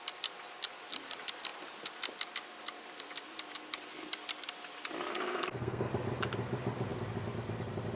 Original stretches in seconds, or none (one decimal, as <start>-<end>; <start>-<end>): 0.0-5.1; 5.9-8.0